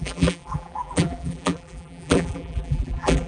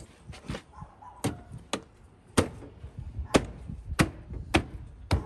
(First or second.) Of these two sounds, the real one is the second